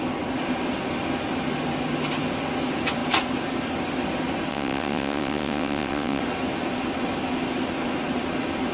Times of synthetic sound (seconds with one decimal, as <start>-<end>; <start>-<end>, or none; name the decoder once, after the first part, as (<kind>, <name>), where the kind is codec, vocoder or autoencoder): 4.5-6.2 (vocoder, WaveNeXt)